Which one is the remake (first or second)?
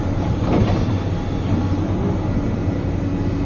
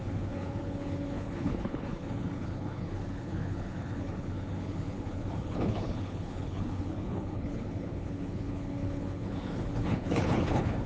second